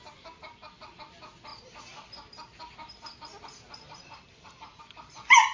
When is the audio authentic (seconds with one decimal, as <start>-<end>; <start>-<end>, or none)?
0.0-5.5